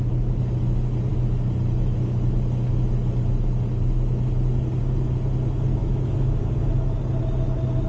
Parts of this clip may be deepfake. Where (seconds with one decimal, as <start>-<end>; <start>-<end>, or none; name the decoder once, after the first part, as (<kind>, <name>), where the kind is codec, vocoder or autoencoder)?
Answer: 5.8-6.4 (autoencoder, DAC-VAE)